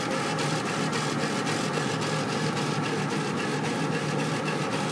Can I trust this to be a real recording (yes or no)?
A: yes